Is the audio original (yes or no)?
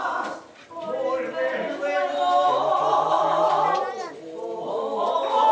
yes